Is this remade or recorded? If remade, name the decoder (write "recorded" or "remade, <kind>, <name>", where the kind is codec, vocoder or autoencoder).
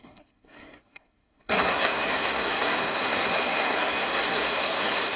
remade, codec, SNAC